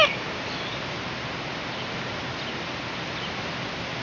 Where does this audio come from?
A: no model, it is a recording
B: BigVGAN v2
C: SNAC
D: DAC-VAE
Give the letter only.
A